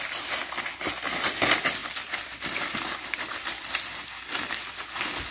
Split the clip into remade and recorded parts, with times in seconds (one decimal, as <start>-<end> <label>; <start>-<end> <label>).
0.0-1.8 recorded; 1.8-3.7 remade; 3.7-5.3 recorded